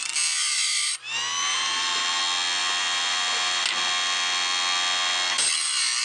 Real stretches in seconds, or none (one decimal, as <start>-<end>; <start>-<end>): 1.0-1.5; 2.2-2.6; 3.6-6.0